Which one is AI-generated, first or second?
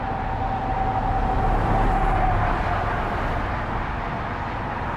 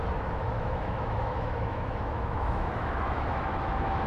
second